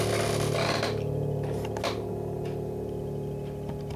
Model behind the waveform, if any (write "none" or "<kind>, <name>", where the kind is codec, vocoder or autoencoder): none